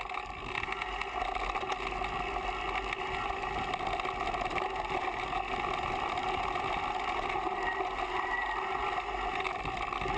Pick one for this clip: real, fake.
real